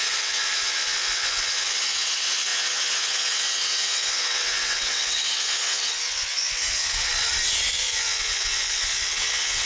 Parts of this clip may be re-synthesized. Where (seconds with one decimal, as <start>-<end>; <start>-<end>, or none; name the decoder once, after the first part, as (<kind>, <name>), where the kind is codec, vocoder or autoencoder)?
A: 0.0-7.1 (vocoder, WaveNeXt); 7.7-9.7